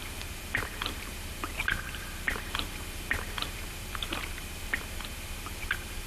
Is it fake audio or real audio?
fake